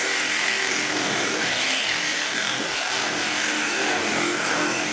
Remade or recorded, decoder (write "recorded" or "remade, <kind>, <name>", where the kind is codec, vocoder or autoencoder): remade, codec, DAC